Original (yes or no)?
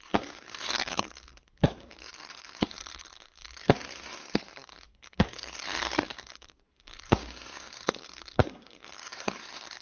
no